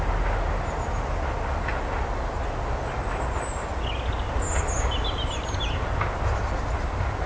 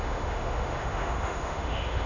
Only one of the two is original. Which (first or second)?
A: first